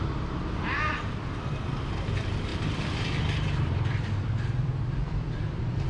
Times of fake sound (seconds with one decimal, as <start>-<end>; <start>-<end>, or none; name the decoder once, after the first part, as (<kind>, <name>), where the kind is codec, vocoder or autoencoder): 0.0-5.9 (vocoder, BigVGAN v2)